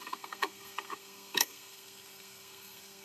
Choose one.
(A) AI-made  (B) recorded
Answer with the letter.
A